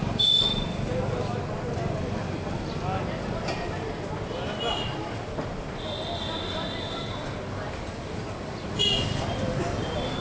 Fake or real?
real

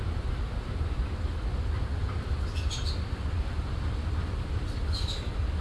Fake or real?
real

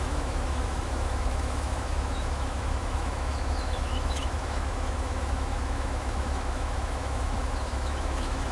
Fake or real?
fake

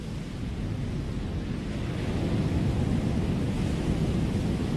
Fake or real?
real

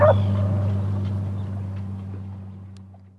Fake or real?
real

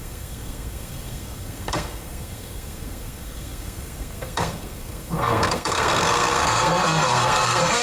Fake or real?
fake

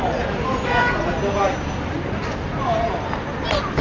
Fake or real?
real